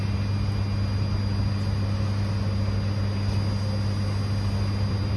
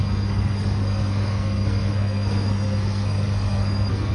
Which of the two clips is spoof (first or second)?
second